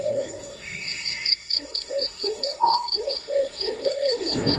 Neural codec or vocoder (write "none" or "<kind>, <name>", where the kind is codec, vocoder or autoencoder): codec, SNAC